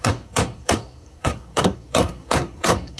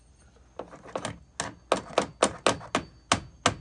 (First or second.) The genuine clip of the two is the second